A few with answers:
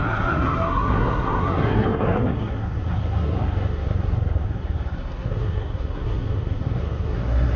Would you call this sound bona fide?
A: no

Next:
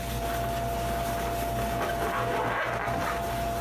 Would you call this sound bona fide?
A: yes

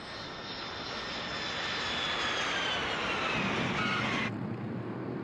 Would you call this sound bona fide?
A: yes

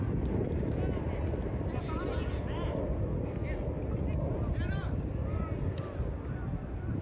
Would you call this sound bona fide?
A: yes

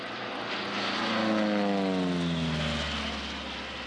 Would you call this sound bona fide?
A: yes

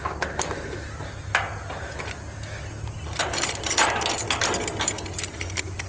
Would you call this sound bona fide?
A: yes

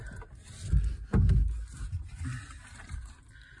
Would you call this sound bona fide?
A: yes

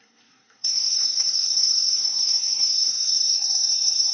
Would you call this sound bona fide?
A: no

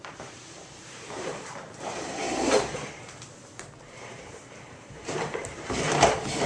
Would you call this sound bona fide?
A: no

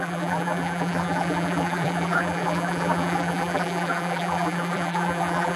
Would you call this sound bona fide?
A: no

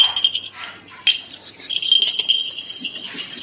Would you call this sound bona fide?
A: yes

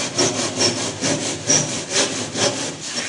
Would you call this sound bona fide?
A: yes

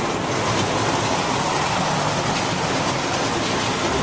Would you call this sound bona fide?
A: yes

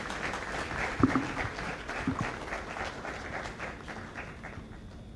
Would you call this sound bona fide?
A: yes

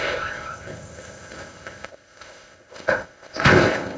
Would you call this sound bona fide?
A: no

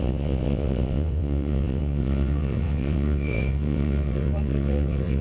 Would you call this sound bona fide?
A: no